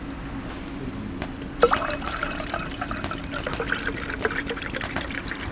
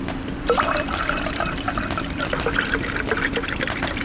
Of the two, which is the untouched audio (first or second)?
first